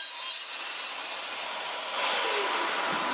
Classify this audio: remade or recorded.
recorded